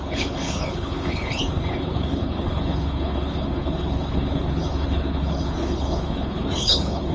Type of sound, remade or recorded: remade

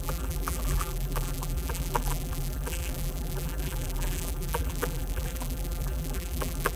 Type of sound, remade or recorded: remade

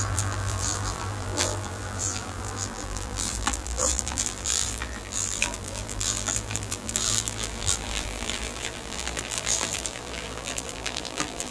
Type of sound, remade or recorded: remade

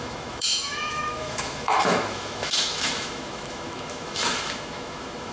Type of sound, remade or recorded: remade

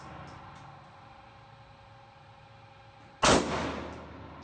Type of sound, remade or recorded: recorded